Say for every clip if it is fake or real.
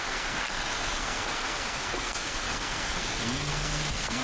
fake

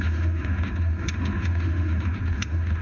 fake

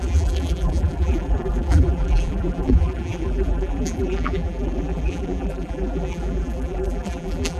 fake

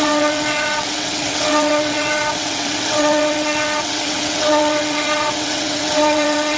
fake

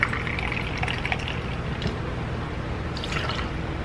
real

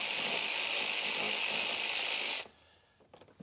real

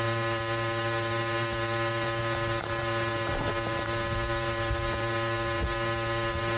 fake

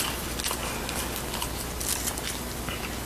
real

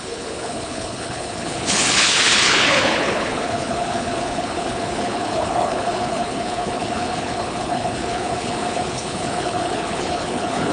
fake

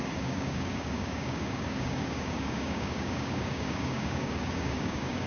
fake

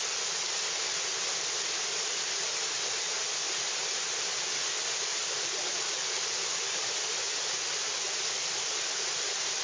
real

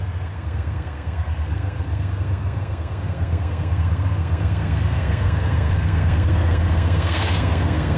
fake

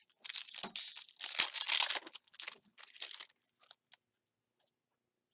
real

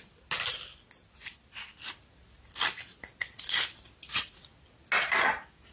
real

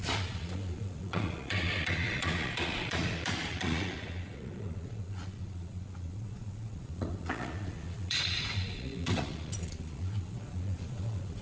fake